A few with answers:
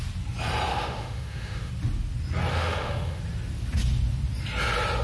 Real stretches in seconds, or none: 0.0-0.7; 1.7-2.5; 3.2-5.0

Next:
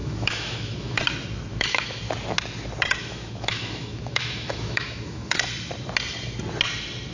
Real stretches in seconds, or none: 1.0-1.5; 2.0-3.0; 5.3-7.1

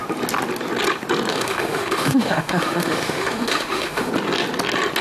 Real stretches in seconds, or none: 0.0-1.3; 4.1-5.0